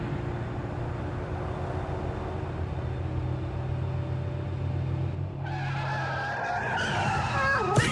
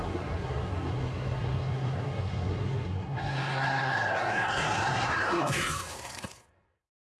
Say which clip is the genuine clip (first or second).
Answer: first